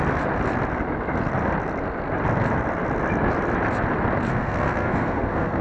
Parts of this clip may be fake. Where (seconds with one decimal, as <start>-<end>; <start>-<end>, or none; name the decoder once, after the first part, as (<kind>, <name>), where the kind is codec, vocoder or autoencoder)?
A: 4.3-5.6 (codec, SNAC)